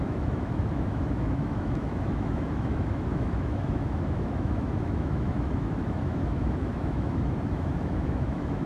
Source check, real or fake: fake